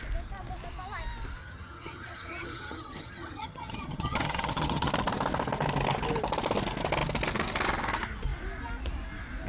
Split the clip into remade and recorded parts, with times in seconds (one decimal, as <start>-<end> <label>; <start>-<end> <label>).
0.0-1.4 recorded; 1.4-4.9 remade; 4.9-9.5 recorded